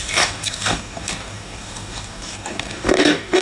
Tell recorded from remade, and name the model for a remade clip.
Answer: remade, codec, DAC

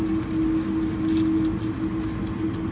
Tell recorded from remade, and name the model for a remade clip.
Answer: recorded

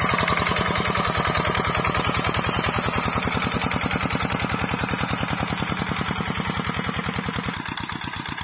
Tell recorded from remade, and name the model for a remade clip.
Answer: recorded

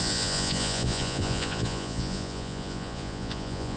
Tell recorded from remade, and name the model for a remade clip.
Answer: remade, vocoder, Vocos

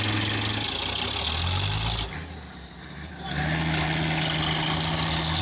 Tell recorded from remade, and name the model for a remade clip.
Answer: recorded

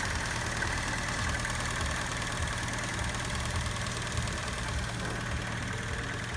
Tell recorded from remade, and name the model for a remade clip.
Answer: recorded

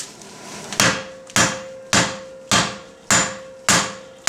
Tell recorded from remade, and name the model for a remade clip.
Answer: recorded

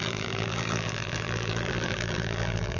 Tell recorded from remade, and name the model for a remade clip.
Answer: remade, vocoder, BigVGAN v2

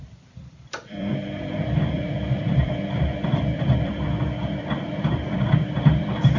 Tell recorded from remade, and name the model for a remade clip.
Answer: remade, vocoder, BigVGAN v2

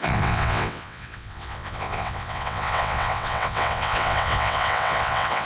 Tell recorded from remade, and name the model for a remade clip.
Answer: remade, vocoder, WaveNeXt